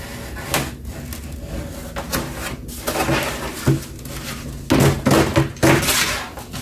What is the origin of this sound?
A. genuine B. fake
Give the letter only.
A